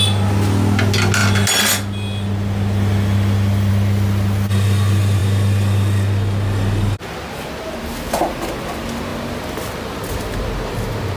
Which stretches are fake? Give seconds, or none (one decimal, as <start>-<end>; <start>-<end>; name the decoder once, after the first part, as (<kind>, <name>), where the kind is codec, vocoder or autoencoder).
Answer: none